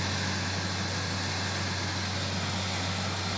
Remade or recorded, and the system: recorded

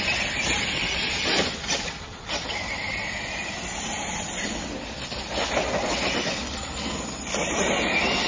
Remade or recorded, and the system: recorded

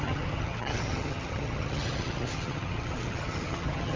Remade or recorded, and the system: remade, vocoder, HiFi-GAN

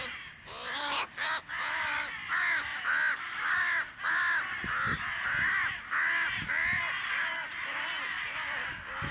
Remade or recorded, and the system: recorded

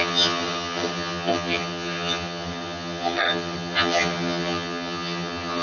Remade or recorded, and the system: remade, vocoder, HiFi-GAN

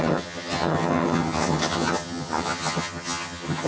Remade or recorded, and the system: remade, vocoder, HiFi-GAN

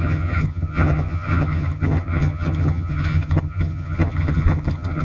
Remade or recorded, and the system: remade, vocoder, HiFi-GAN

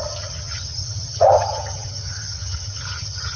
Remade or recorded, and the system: remade, vocoder, HiFi-GAN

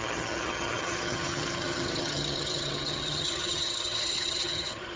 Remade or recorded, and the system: remade, vocoder, HiFi-GAN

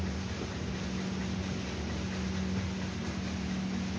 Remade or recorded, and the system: recorded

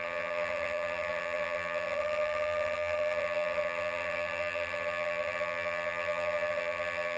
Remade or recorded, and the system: remade, vocoder, HiFi-GAN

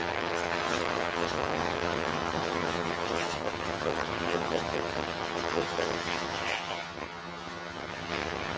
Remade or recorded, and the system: remade, vocoder, HiFi-GAN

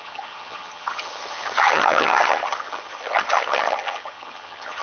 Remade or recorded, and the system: remade, vocoder, HiFi-GAN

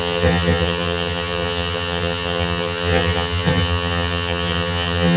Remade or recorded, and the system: remade, vocoder, HiFi-GAN